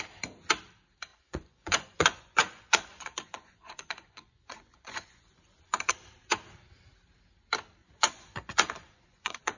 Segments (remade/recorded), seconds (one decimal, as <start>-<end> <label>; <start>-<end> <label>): 0.0-1.1 recorded; 1.1-5.9 remade; 5.9-7.8 recorded; 7.8-9.6 remade